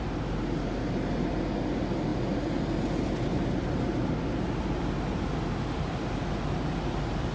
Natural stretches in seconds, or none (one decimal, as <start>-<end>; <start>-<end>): 0.0-7.3